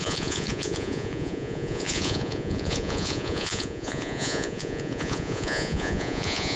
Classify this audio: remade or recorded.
remade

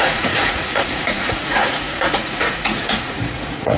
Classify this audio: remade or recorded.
remade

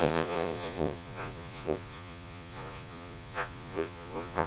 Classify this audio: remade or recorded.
remade